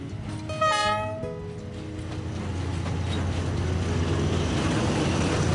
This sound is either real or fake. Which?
real